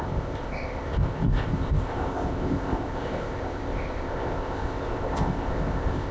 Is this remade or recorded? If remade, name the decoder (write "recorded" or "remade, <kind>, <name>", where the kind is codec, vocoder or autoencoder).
remade, codec, ZipCodec